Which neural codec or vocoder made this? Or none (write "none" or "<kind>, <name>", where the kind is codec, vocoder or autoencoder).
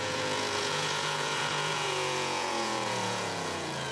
vocoder, Vocos